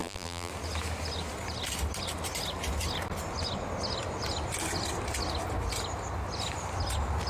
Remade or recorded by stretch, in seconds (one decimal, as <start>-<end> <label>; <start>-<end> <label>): 0.0-0.5 remade; 0.5-7.3 recorded